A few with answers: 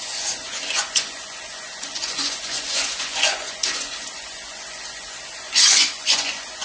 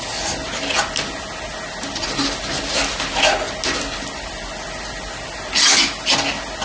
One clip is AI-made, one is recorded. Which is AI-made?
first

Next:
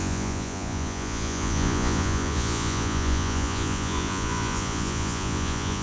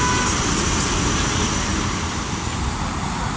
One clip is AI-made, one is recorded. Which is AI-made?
first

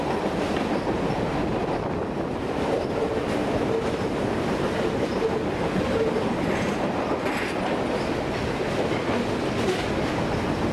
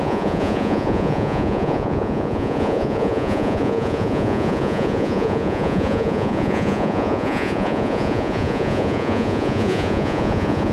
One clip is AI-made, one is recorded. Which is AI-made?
second